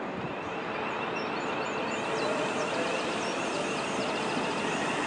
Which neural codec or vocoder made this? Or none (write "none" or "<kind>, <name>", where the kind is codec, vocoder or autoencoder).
none